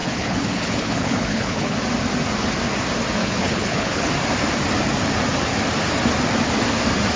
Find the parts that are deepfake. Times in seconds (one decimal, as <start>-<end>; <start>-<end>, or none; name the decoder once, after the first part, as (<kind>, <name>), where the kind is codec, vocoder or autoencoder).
0.0-1.8 (codec, HILCodec); 3.2-4.1